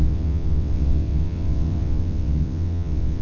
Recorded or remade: remade